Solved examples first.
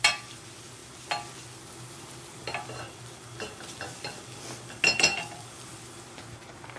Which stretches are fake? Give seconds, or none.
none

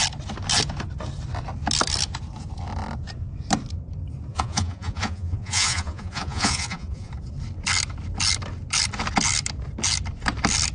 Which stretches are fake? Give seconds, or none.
4.3-7.1 (vocoder, Vocos)

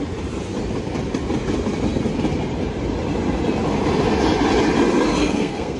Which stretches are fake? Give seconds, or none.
5.2-5.8 (codec, SNAC)

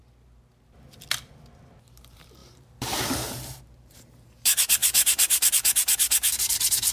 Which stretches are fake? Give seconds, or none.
2.0-6.9 (vocoder, BigVGAN v2)

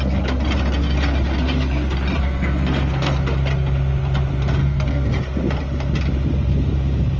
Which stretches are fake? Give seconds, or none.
2.2-3.2 (codec, SNAC); 4.6-5.2

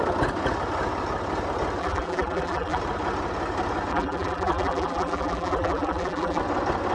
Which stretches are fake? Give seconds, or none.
1.8-2.8 (vocoder, BigVGAN v2); 3.9-6.4

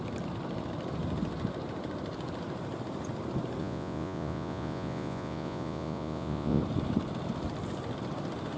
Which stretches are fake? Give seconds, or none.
3.6-6.6 (vocoder, Vocos)

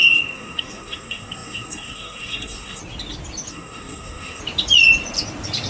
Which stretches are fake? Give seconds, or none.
0.0-2.8 (codec, SNAC); 3.5-4.4